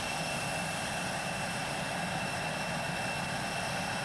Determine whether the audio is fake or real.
real